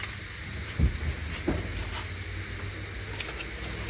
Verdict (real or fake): real